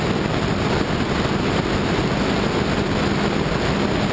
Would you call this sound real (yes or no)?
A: yes